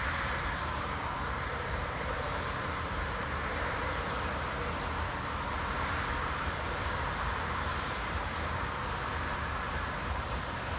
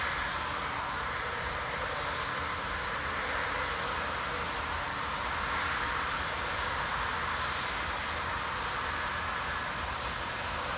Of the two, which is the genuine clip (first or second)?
second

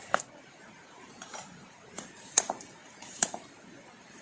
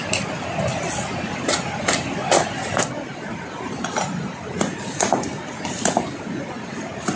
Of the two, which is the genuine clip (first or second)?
second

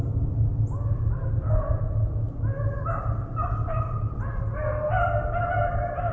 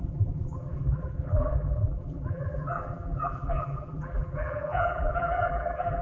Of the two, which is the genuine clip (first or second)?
first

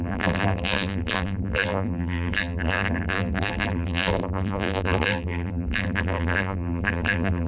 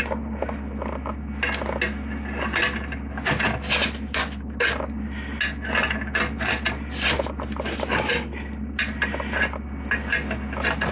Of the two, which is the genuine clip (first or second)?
second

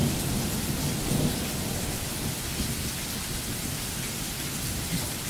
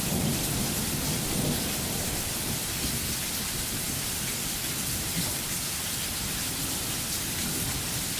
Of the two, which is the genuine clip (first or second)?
first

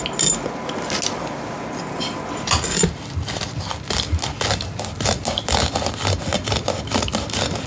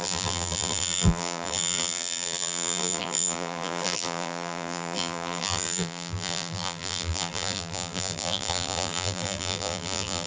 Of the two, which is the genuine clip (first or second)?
first